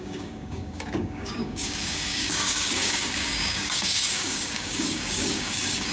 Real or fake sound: fake